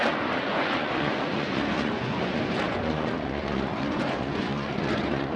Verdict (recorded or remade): remade